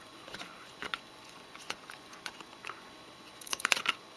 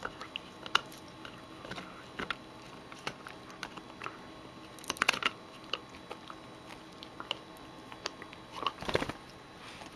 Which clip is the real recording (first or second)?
second